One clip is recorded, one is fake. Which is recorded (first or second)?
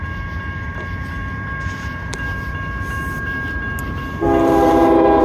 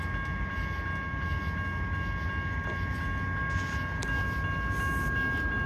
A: second